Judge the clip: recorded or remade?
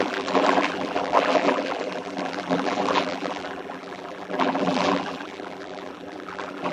remade